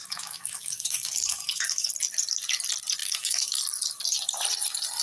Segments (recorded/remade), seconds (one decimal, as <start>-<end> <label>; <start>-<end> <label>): 0.0-1.9 remade; 1.9-3.0 recorded; 3.0-3.6 remade; 3.6-5.0 recorded